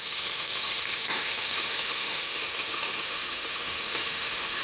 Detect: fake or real fake